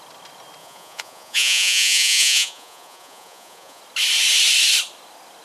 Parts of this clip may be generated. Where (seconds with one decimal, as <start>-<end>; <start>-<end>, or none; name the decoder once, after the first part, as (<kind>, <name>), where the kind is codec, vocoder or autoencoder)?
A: 0.6-3.8 (vocoder, Vocos)